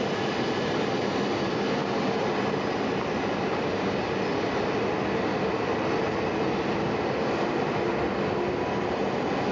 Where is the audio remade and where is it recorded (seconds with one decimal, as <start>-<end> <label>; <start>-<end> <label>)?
0.0-9.5 recorded